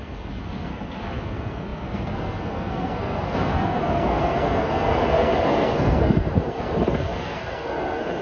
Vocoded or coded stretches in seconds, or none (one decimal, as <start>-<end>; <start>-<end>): 0.0-8.2